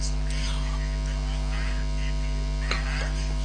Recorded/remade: recorded